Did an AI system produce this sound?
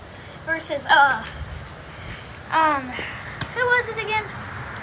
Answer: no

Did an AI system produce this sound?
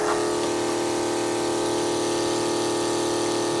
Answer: no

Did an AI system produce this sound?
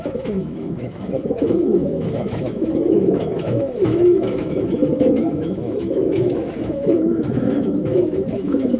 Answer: yes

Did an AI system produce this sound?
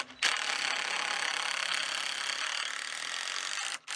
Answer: no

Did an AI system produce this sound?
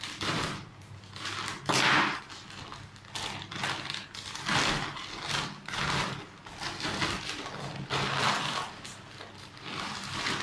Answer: no